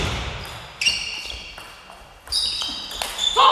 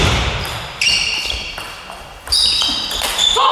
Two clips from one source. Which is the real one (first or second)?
first